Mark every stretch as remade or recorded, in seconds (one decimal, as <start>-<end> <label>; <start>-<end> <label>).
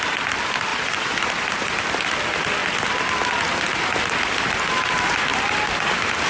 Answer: 0.0-0.7 recorded; 0.7-1.8 remade; 1.8-6.3 recorded